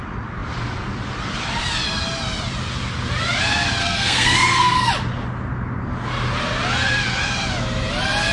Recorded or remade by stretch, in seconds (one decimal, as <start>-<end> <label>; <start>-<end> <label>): 0.0-3.8 recorded; 3.8-4.9 remade; 4.9-8.3 recorded